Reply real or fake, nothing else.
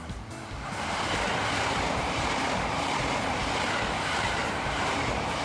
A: real